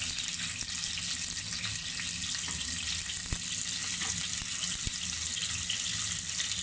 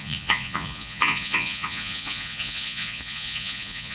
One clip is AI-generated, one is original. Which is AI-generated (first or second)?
second